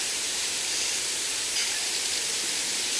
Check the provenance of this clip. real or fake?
fake